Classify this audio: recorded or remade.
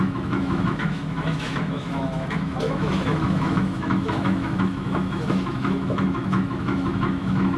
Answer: remade